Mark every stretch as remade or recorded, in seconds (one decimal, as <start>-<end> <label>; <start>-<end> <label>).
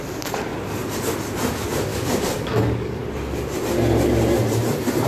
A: 0.0-1.9 recorded; 1.9-3.0 remade; 3.0-5.1 recorded